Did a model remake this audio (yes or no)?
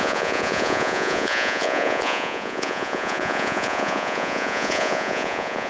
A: yes